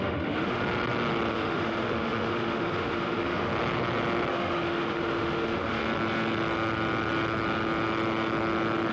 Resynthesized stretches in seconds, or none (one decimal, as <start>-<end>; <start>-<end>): 0.0-0.6; 1.3-3.5; 4.3-5.8